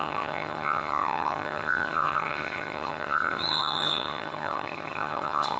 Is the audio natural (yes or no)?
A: no